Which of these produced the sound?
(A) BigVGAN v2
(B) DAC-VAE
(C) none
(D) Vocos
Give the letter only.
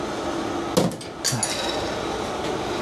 C